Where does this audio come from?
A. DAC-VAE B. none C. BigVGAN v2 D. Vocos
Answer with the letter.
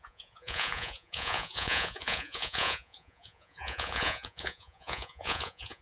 D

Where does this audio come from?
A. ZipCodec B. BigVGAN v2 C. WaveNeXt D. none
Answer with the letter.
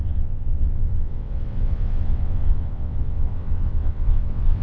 C